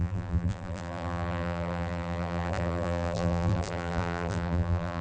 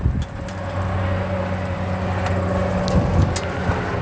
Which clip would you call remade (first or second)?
first